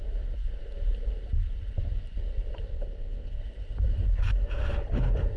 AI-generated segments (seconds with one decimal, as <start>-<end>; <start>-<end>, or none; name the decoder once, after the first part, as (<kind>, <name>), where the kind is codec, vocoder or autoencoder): 2.7-3.4 (vocoder, WaveNeXt)